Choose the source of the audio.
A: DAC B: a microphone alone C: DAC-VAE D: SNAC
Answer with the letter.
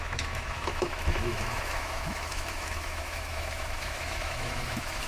C